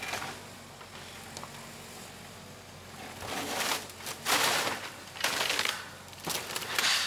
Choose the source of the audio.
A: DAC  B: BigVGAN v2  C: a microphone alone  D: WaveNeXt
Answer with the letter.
C